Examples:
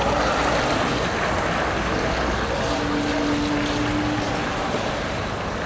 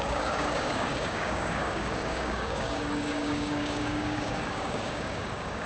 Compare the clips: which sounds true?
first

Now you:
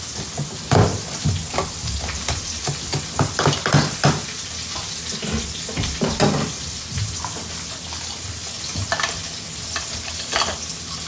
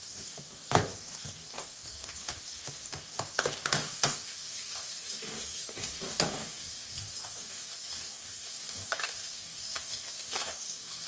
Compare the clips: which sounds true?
first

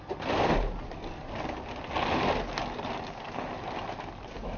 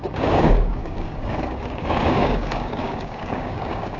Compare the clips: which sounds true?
first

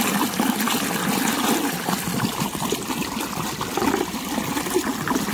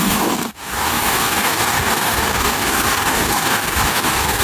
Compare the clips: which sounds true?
first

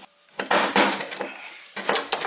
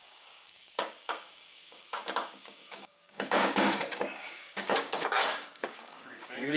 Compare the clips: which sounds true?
first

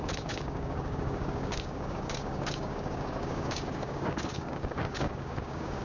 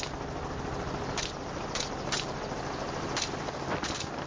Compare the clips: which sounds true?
second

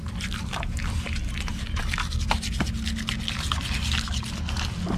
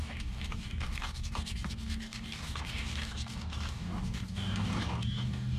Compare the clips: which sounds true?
first